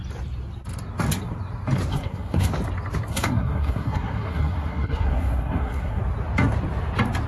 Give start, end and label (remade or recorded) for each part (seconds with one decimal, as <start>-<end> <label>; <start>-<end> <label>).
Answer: 0.0-1.9 recorded; 1.9-2.5 remade; 2.5-3.1 recorded; 3.1-6.0 remade; 6.0-7.3 recorded